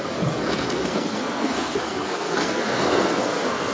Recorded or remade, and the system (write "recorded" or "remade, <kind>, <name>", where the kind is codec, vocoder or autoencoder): remade, codec, SNAC